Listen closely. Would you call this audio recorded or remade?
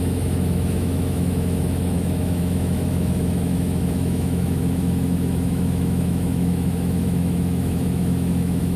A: remade